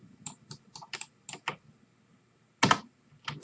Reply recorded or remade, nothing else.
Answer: recorded